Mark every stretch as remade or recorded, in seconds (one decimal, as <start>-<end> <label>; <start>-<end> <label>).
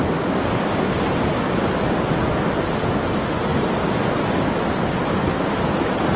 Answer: 0.0-6.2 recorded